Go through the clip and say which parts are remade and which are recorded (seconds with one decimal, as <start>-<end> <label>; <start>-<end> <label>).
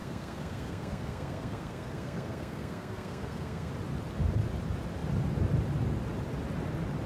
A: 0.0-3.7 remade; 3.7-7.1 recorded